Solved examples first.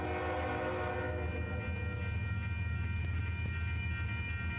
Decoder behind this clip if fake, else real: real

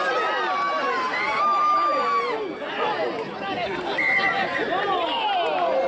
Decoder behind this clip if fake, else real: real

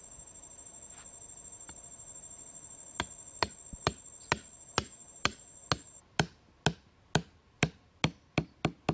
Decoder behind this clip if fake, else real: real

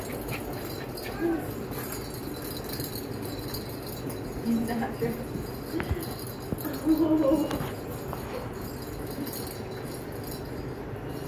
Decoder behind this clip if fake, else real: real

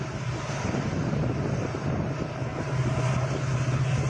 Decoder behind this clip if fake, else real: real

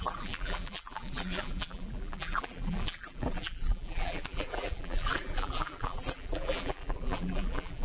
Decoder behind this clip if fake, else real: fake, vocoder, BigVGAN v2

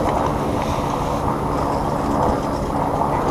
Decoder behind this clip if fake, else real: real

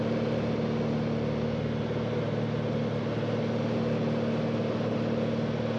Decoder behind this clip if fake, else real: real